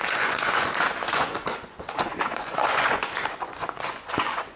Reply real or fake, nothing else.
fake